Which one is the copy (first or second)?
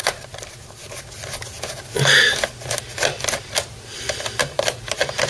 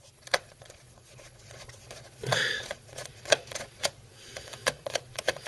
second